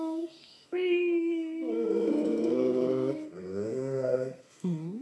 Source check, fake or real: fake